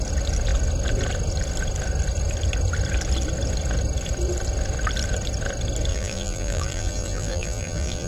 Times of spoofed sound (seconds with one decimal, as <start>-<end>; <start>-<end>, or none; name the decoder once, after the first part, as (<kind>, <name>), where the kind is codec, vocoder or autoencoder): 5.9-8.1 (vocoder, BigVGAN v2)